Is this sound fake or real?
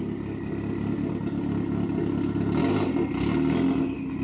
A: real